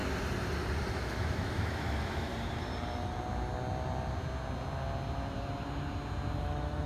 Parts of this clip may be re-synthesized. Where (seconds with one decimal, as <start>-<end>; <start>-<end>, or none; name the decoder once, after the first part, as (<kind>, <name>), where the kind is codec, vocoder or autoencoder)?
0.9-2.3 (autoencoder, DAC-VAE); 6.4-6.9